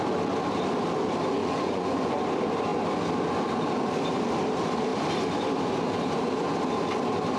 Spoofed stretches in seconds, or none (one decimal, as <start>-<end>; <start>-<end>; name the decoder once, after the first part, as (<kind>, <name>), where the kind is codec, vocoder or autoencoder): 1.4-2.2 (vocoder, Vocos)